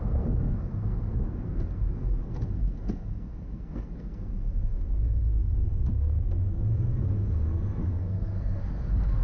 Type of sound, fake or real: fake